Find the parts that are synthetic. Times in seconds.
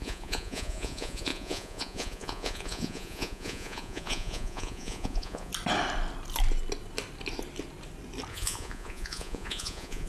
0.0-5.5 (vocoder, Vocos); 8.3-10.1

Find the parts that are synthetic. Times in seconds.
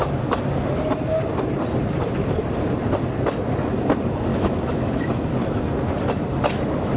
4.3-5.1 (autoencoder, DAC-VAE)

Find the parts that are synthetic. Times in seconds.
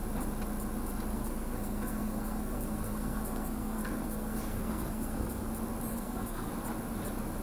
1.1-5.5 (codec, SNAC); 5.9-6.5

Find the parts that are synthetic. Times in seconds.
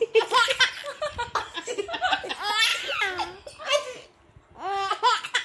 none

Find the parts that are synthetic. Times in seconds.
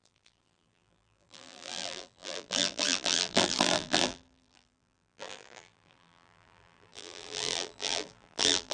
0.0-8.7 (vocoder, BigVGAN v2)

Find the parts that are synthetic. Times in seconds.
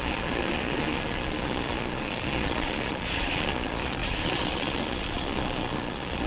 0.0-6.3 (vocoder, Vocos)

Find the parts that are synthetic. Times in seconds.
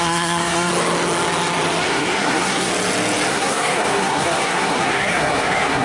0.0-0.7 (codec, SNAC); 1.9-2.7; 3.3-5.8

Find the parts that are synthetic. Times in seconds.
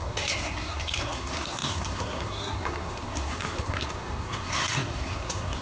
0.0-5.6 (codec, SNAC)